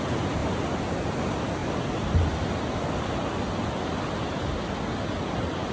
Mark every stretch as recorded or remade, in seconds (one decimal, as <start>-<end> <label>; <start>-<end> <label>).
0.0-5.7 recorded